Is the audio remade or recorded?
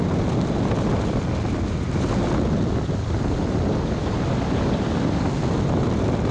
recorded